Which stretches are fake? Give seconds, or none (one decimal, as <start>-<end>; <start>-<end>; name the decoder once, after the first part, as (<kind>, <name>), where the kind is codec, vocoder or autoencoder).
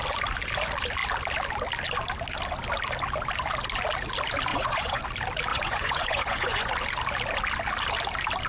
4.5-5.0 (vocoder, Vocos); 5.5-6.7